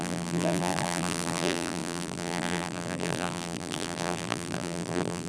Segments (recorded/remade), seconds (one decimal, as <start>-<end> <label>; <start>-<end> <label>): 0.0-5.3 remade